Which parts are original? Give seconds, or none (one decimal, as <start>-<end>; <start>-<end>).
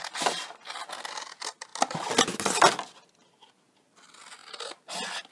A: 0.0-5.3